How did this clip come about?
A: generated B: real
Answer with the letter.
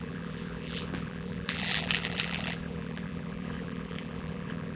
A